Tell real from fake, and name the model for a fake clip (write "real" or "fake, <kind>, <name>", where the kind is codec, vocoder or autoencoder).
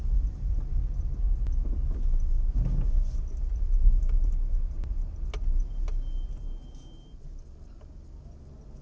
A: real